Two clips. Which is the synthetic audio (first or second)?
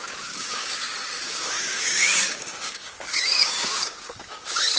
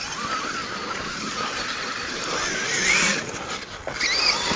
first